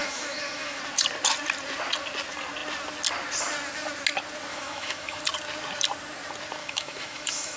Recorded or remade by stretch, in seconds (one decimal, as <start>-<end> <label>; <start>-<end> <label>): 0.0-0.8 remade; 0.8-4.5 recorded; 4.5-5.2 remade; 5.2-6.6 recorded; 6.6-7.6 remade